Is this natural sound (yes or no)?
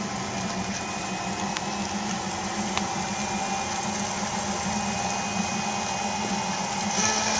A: yes